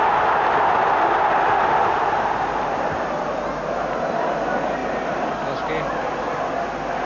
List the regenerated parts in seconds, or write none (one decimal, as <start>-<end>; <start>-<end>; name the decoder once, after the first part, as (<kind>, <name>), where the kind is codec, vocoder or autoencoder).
4.8-7.1 (vocoder, BigVGAN v2)